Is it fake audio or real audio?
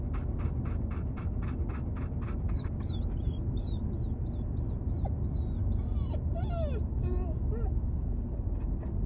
real